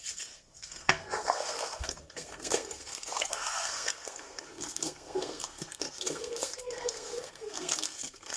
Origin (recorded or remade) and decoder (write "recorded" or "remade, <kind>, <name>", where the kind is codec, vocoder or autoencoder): remade, codec, SNAC